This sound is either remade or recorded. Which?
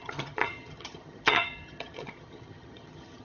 remade